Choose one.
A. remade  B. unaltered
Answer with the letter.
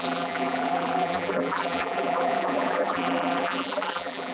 A